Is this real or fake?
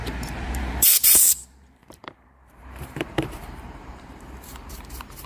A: fake